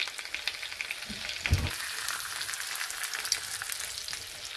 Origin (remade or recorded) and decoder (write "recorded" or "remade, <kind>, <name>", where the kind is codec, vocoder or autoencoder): recorded